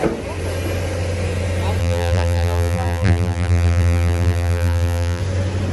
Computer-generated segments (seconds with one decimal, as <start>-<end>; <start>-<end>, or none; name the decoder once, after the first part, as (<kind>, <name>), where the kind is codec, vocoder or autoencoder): 1.8-5.2 (vocoder, BigVGAN v2)